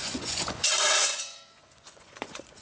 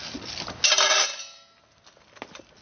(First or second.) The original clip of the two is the second